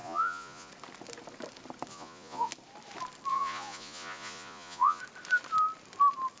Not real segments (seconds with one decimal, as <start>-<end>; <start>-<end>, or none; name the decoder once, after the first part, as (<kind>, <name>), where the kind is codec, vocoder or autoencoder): 0.0-0.7 (vocoder, Vocos); 1.9-2.5; 3.3-5.0